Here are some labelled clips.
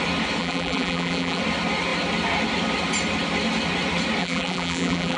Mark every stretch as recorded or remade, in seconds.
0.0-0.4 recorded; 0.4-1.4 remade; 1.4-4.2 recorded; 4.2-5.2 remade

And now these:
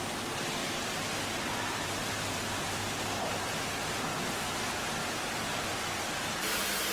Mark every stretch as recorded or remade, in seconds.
0.0-0.6 recorded; 0.6-4.3 remade; 4.3-5.0 recorded; 5.0-5.5 remade; 5.5-6.9 recorded

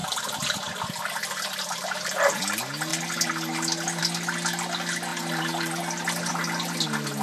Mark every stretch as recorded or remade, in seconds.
0.0-2.4 remade; 2.4-5.1 recorded; 5.1-6.3 remade; 6.3-7.2 recorded

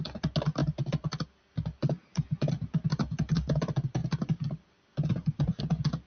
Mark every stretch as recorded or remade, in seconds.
0.0-0.6 recorded; 0.6-2.5 remade; 2.5-4.0 recorded; 4.0-5.6 remade; 5.6-6.1 recorded

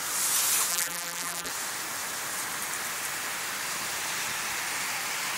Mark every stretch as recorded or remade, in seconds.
0.0-0.7 recorded; 0.7-1.5 remade; 1.5-5.4 recorded

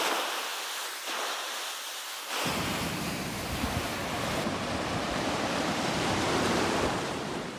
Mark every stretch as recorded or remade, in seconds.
0.0-0.5 remade; 0.5-2.3 recorded; 2.3-4.0 remade; 4.0-5.6 recorded; 5.6-7.6 remade

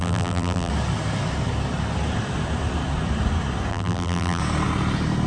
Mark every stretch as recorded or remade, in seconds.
0.0-0.7 remade; 0.7-3.7 recorded; 3.7-4.4 remade; 4.4-5.3 recorded

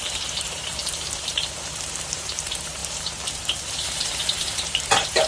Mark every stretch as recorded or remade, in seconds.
0.0-5.3 remade